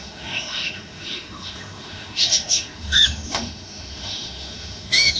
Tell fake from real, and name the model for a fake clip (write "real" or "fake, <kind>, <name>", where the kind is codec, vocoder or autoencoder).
fake, autoencoder, DAC-VAE